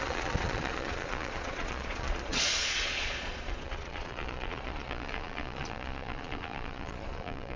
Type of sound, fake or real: fake